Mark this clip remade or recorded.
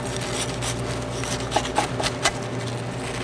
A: recorded